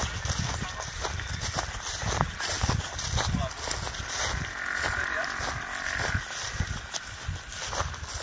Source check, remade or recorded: recorded